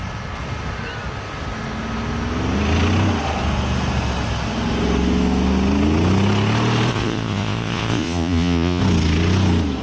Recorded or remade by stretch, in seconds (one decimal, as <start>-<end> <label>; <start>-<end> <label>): 0.0-6.9 recorded; 6.9-8.8 remade; 8.8-9.8 recorded